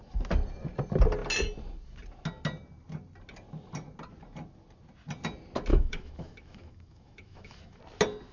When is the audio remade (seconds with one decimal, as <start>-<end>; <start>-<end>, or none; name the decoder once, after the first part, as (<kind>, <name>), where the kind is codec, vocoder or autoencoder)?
5.7-7.8 (autoencoder, DAC-VAE)